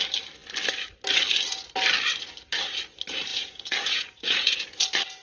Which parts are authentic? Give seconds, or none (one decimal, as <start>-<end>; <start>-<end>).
0.0-3.3; 4.8-5.2